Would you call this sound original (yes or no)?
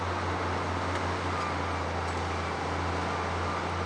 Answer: yes